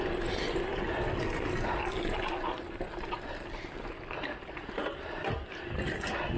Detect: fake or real real